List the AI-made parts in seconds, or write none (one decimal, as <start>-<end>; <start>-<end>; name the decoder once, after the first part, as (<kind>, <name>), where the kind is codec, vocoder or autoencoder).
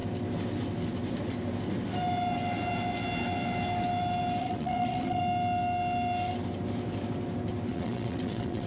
4.4-5.2 (vocoder, WaveNeXt); 7.7-8.7